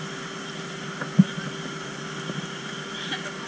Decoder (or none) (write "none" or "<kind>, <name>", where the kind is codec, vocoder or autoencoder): none